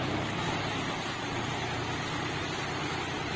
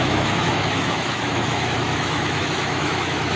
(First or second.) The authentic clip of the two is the first